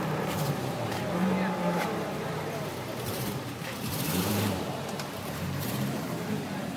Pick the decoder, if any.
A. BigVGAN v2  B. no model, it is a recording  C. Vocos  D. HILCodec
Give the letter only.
A